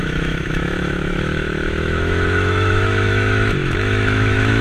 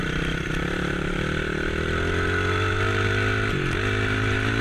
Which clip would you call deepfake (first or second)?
first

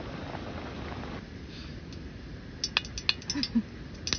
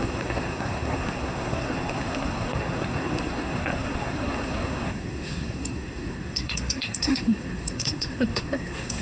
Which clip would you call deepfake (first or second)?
second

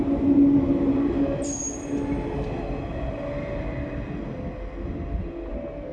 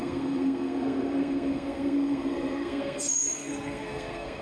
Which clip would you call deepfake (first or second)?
second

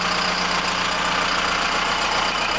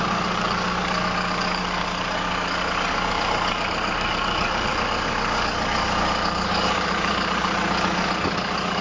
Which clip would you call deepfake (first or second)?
second